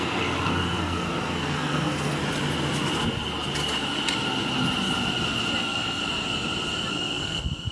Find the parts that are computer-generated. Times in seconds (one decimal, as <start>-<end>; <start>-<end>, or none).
0.0-2.2; 5.6-6.0; 6.9-7.7